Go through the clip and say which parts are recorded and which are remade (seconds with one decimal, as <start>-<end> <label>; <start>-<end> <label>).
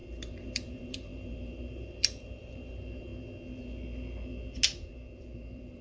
0.0-3.1 remade; 3.1-5.2 recorded; 5.2-5.8 remade